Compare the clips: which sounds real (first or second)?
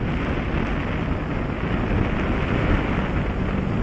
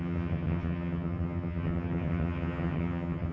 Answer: first